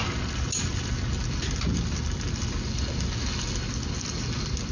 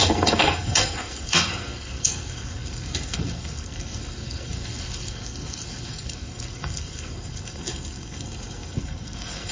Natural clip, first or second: first